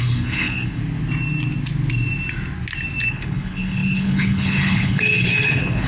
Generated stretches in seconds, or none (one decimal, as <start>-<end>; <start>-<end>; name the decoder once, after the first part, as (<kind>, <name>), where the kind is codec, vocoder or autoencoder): 0.0-0.8 (codec, HILCodec); 3.1-5.9